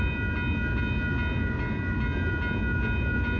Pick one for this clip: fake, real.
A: real